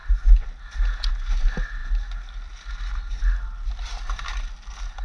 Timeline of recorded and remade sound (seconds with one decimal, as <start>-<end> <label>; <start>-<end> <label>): 0.0-5.0 recorded